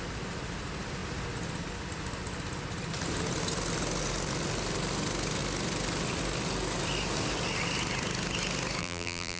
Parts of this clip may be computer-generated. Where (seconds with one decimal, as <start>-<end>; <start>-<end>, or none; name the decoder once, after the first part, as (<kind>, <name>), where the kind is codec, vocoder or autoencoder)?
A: 8.8-9.4 (vocoder, BigVGAN v2)